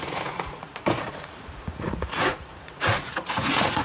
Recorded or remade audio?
remade